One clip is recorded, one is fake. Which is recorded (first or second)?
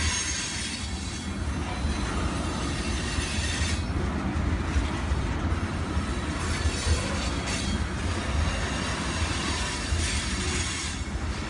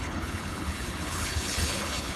first